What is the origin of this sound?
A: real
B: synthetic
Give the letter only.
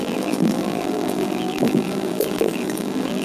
B